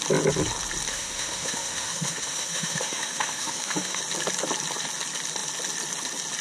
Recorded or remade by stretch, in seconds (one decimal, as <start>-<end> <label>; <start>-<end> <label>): 0.0-0.9 recorded; 0.9-4.0 remade; 4.0-6.4 recorded